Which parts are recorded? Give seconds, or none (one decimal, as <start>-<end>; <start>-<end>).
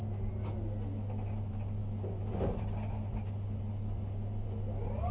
0.0-5.1